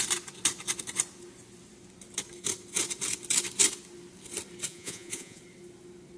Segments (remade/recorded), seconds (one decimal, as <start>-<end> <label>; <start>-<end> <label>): 0.0-4.7 recorded; 4.7-5.4 remade; 5.4-6.2 recorded

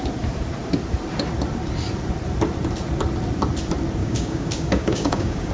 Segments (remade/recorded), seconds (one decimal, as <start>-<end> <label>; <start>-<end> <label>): 0.0-4.0 recorded; 4.0-5.5 remade